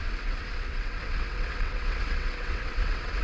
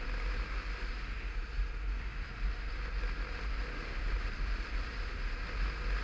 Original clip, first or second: second